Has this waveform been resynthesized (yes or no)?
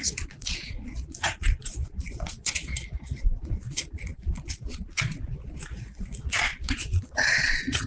yes